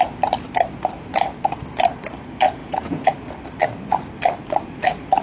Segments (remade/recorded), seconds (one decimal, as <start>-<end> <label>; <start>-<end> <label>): 0.0-2.6 recorded; 2.6-3.1 remade; 3.1-5.2 recorded

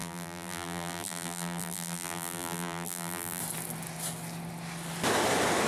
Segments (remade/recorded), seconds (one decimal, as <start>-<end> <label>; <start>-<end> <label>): 0.0-3.4 remade; 3.4-5.7 recorded

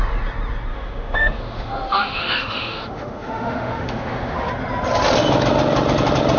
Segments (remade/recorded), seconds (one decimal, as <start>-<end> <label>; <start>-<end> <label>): 0.0-0.7 recorded; 0.7-4.5 remade; 4.5-6.4 recorded

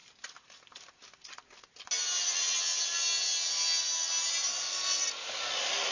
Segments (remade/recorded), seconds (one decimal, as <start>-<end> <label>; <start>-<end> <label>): 0.0-5.9 recorded

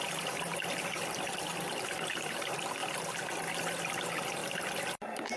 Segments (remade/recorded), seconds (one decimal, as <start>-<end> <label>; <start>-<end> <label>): 0.0-0.5 remade; 0.5-1.8 recorded; 1.8-2.8 remade; 2.8-4.0 recorded; 4.0-4.4 remade; 4.4-5.4 recorded